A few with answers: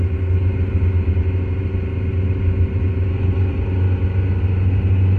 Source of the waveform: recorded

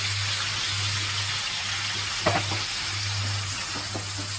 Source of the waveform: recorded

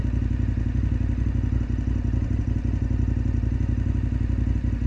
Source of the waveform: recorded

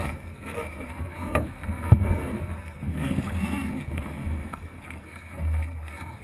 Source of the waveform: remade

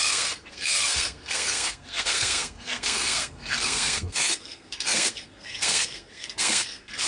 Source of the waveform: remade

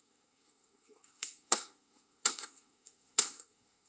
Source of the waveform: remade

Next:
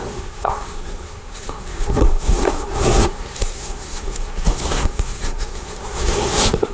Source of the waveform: remade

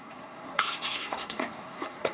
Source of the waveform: remade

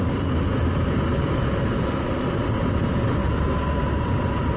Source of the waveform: recorded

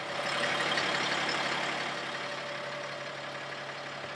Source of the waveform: recorded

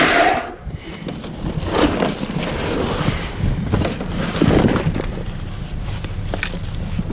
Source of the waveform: recorded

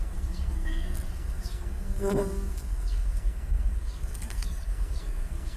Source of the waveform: remade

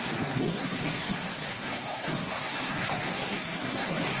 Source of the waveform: remade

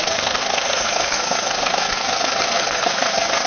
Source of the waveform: remade